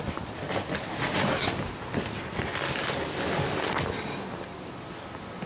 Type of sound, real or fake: real